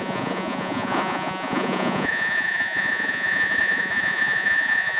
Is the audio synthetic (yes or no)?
yes